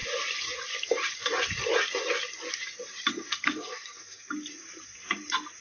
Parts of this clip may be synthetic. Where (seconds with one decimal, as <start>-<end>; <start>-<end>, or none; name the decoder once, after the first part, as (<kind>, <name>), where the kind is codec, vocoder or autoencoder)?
3.1-4.3 (codec, SNAC)